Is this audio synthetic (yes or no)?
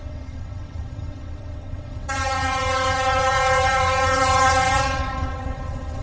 yes